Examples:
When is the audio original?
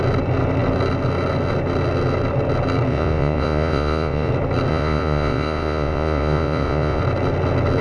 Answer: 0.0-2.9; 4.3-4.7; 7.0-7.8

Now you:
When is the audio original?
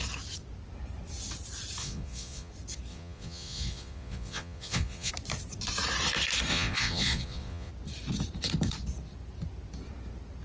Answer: 0.0-1.8; 2.5-2.9; 5.1-6.5; 7.7-10.4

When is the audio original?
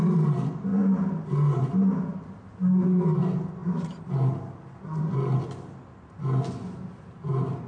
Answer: 0.0-7.7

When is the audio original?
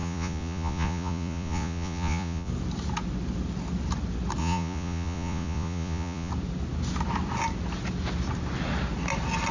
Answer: 2.5-4.4; 6.3-9.5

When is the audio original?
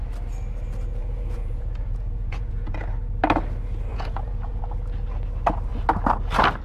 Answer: 0.0-1.0; 2.8-3.9; 4.6-6.6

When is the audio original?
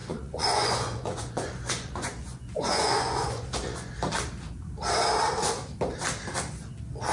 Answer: 3.9-7.1